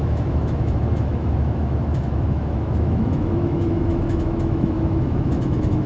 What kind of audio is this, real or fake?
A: fake